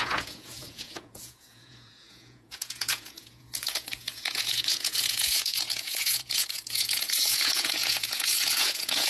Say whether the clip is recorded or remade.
remade